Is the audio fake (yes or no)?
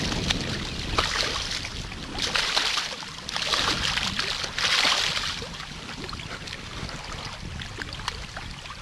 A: no